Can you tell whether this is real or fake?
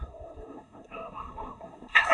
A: fake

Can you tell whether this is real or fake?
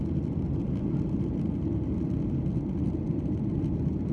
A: real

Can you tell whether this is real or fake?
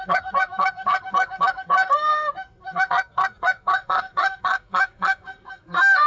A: fake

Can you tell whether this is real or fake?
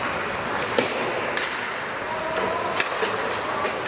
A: real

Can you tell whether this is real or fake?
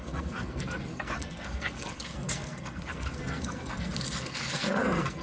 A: fake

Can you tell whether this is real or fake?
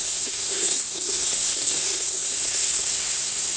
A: fake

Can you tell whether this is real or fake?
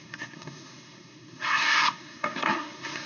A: fake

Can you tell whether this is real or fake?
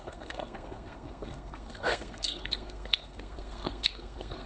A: fake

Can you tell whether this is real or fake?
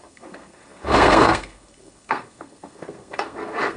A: fake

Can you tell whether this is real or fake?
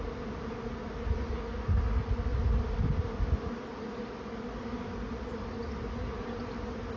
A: real